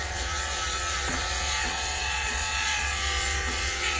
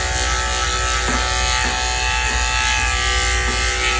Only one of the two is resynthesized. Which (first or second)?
first